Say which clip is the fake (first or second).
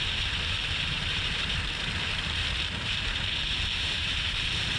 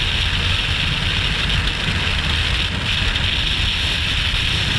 first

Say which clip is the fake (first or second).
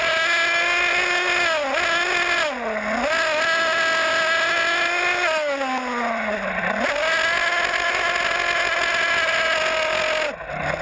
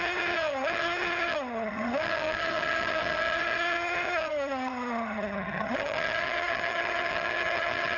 second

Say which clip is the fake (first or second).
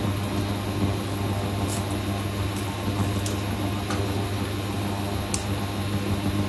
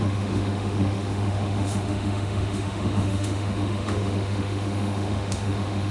second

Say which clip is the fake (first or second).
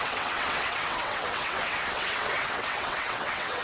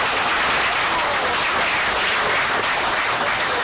first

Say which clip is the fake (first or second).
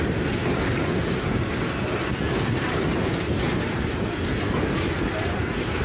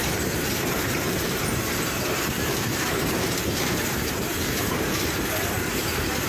second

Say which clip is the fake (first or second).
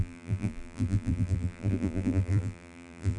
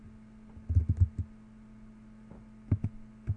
first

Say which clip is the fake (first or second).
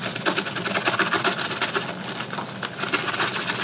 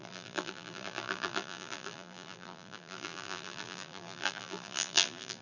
second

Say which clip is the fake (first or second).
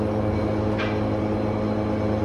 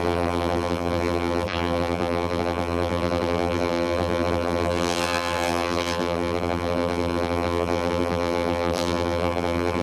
second